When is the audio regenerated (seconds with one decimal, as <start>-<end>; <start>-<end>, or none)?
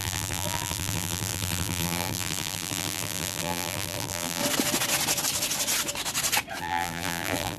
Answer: 0.0-4.4; 6.6-7.6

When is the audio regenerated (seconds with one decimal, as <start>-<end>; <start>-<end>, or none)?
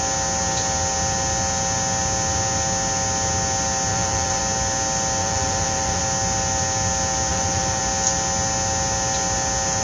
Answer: 3.9-4.4; 5.2-6.0; 7.3-7.8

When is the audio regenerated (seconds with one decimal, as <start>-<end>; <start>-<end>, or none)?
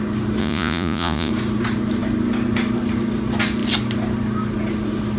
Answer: 0.4-1.3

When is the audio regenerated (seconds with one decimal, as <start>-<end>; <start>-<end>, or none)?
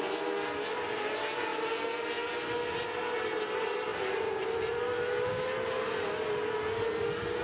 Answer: none